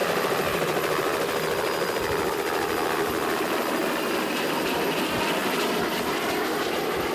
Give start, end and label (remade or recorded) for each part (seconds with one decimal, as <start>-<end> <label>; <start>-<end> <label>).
0.0-5.4 recorded; 5.4-7.1 remade